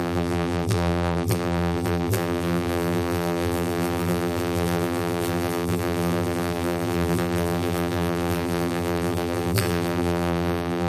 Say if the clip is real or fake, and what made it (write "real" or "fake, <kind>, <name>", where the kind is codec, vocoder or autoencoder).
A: fake, vocoder, BigVGAN v2